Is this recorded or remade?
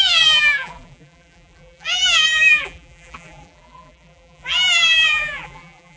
remade